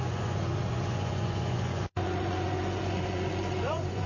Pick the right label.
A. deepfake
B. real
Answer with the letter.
A